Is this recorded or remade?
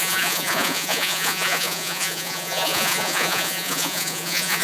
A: remade